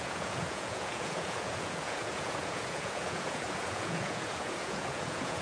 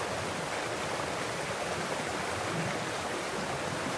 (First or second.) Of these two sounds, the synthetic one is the first